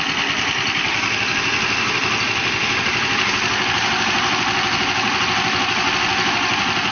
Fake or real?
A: real